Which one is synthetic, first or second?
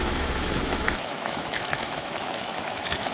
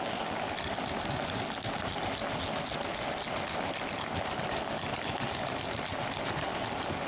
first